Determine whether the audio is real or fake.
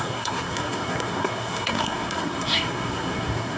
fake